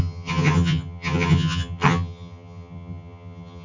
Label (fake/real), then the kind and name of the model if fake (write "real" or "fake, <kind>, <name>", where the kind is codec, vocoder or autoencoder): fake, vocoder, HiFi-GAN